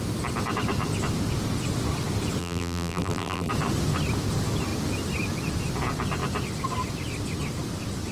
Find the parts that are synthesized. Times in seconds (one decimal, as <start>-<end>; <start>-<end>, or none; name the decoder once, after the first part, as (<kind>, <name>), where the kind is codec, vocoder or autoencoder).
2.4-3.5 (vocoder, BigVGAN v2)